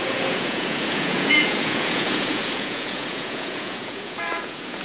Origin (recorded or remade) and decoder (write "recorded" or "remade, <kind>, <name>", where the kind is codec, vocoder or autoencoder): remade, vocoder, Vocos